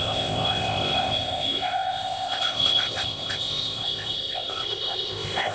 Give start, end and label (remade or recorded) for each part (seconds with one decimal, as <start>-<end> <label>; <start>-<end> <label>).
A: 0.0-5.5 remade